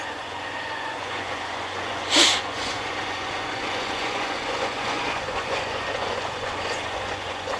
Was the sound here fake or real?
fake